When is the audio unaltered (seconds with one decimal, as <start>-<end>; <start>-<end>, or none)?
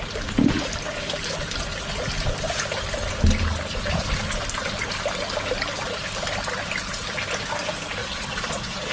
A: 0.0-8.0